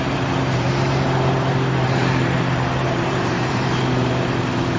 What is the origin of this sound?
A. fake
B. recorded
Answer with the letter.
A